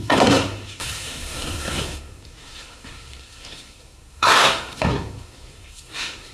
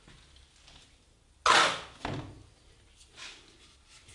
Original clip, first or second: second